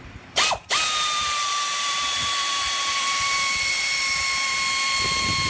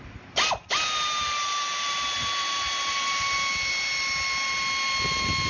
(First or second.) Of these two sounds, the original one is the second